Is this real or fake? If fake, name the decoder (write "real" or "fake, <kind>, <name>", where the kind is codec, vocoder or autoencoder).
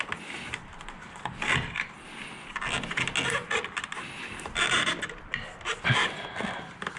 real